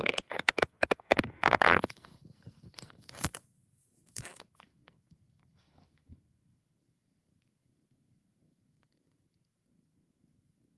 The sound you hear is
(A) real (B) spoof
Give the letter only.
B